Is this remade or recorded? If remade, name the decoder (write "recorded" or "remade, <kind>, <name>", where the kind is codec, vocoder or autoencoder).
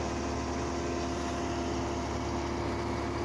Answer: recorded